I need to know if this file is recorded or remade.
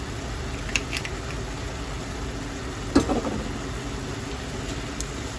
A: recorded